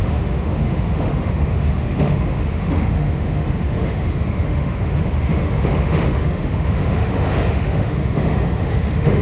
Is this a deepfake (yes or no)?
yes